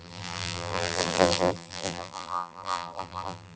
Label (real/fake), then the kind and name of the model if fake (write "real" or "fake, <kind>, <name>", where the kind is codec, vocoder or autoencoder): fake, vocoder, BigVGAN v2